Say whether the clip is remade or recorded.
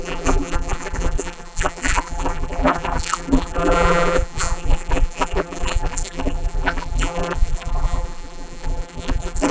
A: remade